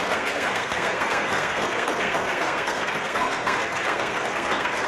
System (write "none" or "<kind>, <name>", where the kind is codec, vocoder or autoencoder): codec, SNAC